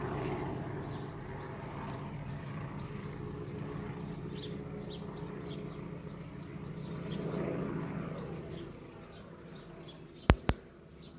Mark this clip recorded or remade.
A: recorded